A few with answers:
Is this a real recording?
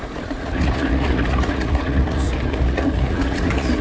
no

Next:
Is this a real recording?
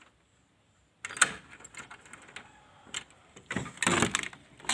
yes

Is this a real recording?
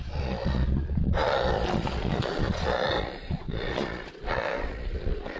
no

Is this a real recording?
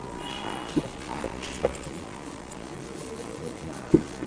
no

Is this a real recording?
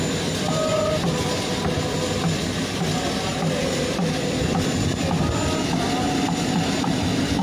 yes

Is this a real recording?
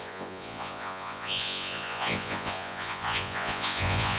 no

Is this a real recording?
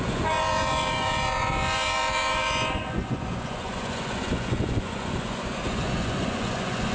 no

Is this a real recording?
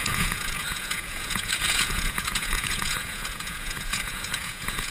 no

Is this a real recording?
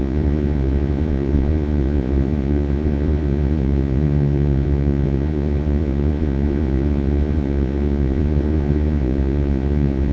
no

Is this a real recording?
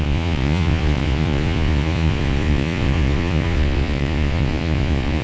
no